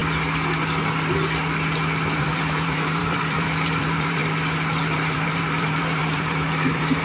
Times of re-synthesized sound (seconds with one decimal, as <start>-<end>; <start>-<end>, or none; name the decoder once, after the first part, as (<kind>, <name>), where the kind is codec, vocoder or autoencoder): 2.2-4.2 (vocoder, BigVGAN v2); 4.8-7.0